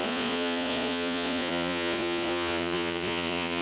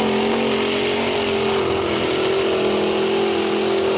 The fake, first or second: first